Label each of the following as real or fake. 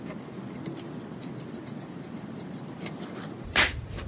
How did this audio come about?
real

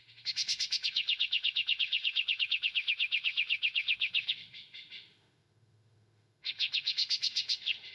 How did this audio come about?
fake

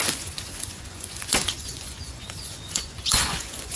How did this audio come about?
fake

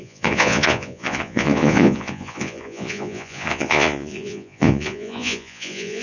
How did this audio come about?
fake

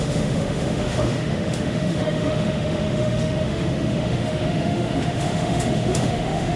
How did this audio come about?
fake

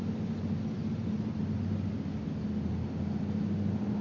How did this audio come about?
real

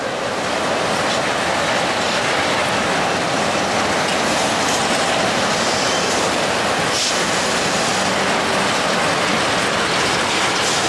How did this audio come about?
real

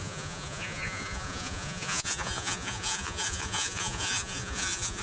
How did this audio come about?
fake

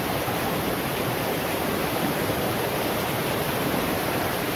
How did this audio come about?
fake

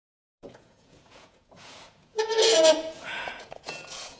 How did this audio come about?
fake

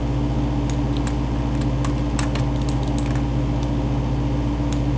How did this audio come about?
real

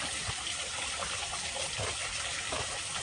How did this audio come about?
real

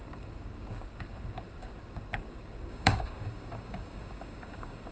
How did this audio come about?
fake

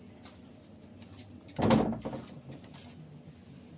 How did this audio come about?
real